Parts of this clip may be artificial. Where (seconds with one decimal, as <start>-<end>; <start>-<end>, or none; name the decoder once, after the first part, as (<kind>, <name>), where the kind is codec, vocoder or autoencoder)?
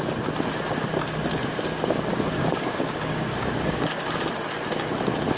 1.4-4.1 (codec, DAC)